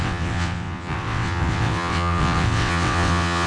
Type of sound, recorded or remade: remade